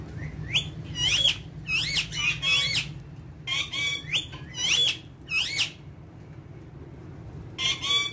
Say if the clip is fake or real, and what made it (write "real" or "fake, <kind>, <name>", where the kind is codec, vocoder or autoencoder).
real